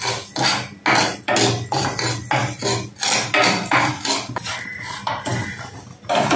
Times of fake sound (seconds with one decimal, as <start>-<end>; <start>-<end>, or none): none